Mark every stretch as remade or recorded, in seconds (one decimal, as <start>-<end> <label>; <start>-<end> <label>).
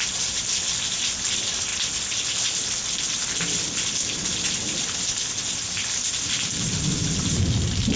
0.0-8.0 recorded